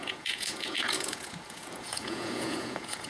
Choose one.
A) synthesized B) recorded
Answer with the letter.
A